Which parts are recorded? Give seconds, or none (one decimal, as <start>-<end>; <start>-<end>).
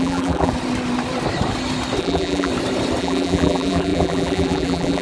0.5-2.0; 2.5-3.0